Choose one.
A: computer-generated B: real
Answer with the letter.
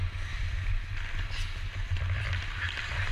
B